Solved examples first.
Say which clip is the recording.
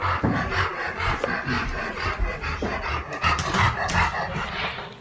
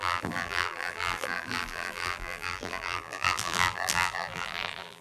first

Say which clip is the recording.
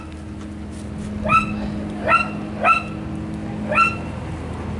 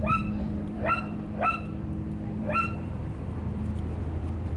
first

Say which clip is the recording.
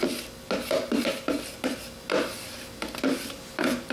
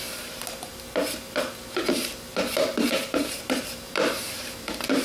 first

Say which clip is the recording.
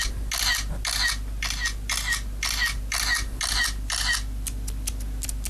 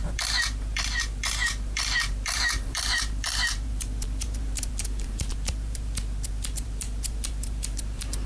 first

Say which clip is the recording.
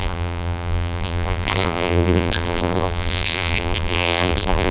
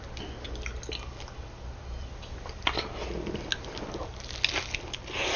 second